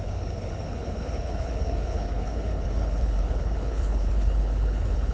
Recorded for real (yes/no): no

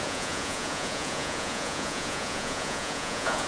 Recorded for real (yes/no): no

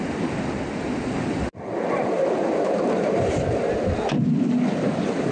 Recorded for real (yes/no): yes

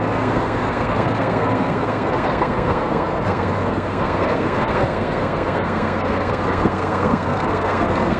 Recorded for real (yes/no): no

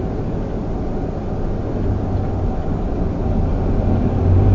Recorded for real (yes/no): yes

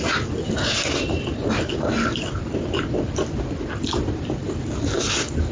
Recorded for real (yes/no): yes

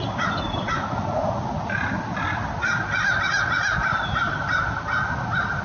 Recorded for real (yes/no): yes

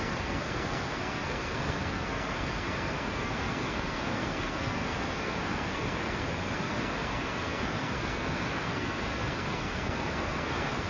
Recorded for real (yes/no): no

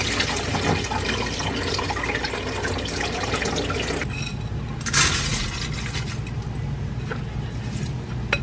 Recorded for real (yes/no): yes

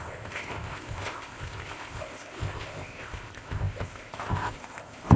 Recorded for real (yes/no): no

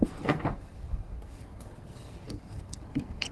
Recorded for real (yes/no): no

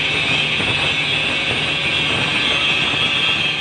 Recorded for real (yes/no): yes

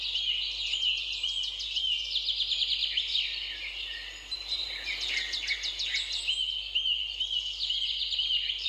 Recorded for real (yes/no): yes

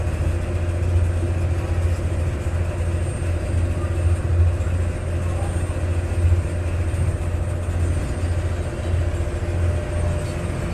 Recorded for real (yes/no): yes